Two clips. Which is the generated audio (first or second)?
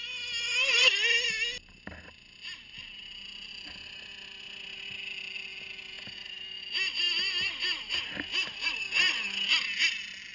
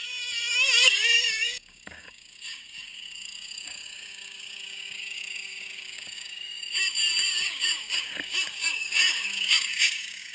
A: second